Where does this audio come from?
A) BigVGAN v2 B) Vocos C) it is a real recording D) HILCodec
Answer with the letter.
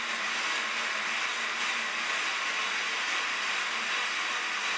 C